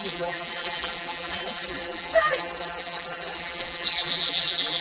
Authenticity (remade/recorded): remade